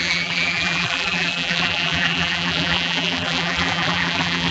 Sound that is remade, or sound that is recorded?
remade